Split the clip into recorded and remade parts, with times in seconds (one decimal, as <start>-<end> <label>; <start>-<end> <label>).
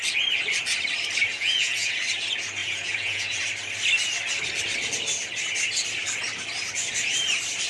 0.0-1.3 recorded; 1.3-1.9 remade; 1.9-2.6 recorded; 2.6-3.4 remade; 3.4-7.7 recorded